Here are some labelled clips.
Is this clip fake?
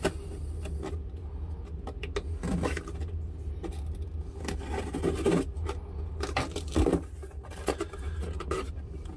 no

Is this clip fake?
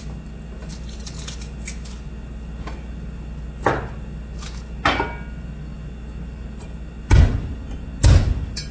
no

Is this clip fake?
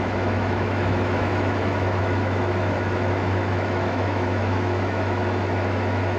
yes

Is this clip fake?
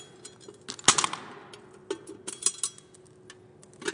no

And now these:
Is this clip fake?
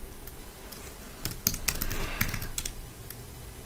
no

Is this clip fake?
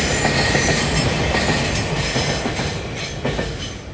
no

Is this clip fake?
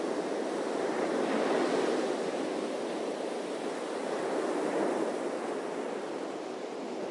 no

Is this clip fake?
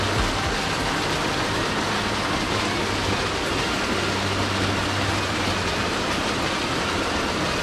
no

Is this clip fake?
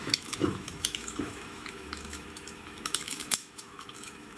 yes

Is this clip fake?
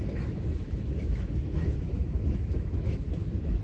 yes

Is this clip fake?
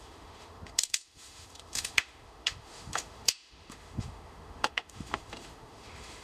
yes